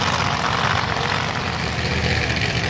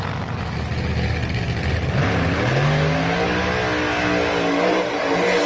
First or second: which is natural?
second